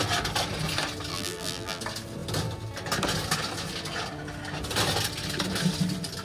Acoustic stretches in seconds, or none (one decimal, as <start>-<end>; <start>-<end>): 0.0-1.1; 1.8-6.2